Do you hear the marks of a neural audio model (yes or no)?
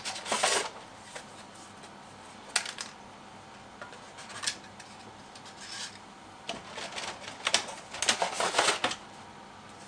no